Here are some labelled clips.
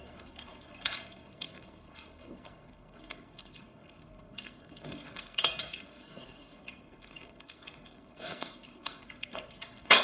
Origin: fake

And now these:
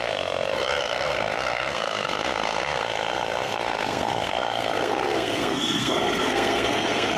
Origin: fake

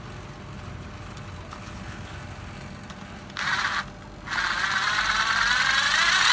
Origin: real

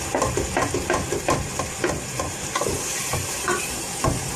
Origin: real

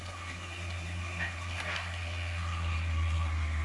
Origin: fake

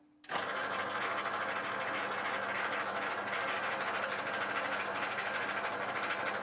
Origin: real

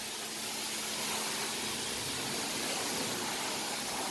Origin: real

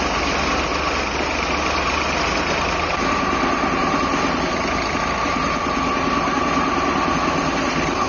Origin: real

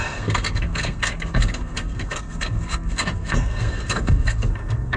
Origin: fake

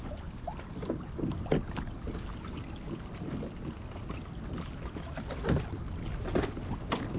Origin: real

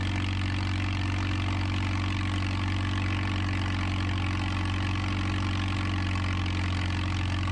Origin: real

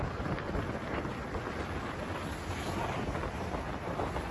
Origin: real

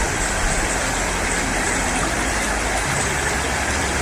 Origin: real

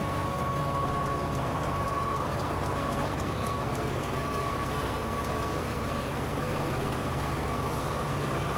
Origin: fake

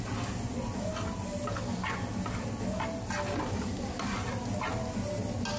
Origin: real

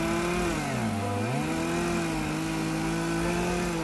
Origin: real